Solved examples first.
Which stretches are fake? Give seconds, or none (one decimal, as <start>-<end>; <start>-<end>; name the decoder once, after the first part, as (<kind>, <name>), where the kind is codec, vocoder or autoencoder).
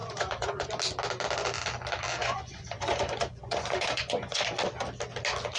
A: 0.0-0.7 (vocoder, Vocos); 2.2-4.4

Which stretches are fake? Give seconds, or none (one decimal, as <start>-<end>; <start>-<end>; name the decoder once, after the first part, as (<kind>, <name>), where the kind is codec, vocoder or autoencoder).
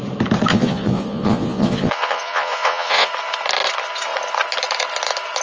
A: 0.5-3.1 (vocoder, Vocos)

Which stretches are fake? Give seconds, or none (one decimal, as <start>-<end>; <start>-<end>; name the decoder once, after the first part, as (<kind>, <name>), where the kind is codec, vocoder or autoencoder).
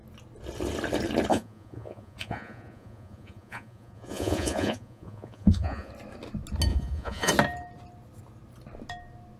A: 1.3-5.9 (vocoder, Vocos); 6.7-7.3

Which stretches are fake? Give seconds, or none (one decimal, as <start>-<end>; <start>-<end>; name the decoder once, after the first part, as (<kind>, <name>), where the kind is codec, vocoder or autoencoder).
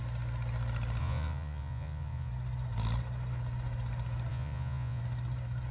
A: 1.0-2.3 (vocoder, Vocos); 4.3-5.0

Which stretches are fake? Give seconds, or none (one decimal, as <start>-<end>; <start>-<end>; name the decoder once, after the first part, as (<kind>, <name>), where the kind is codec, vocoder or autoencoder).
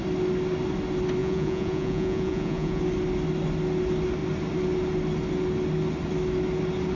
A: 1.2-2.8 (vocoder, Vocos)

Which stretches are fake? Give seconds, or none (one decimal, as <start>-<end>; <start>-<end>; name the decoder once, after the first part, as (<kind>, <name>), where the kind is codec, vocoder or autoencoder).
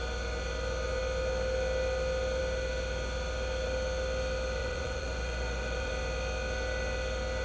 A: 4.6-5.9 (vocoder, Vocos)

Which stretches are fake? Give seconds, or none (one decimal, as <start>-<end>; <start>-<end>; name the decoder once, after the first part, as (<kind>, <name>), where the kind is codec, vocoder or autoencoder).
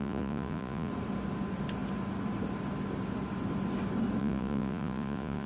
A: 0.0-0.9 (vocoder, Vocos); 4.2-5.5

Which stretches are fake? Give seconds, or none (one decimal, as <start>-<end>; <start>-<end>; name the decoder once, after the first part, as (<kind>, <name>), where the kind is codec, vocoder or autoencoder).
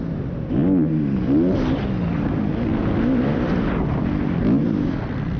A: none